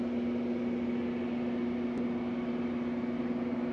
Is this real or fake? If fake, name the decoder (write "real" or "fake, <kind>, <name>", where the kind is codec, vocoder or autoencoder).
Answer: real